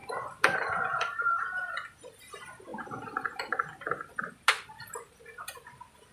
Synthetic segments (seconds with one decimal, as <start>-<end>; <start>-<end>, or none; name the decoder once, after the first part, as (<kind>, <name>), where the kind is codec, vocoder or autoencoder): none